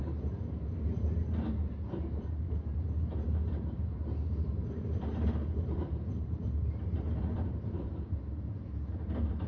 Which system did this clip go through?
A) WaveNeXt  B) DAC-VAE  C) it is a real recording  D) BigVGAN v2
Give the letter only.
D